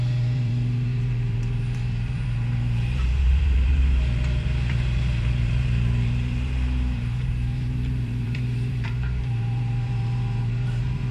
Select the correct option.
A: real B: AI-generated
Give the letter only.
B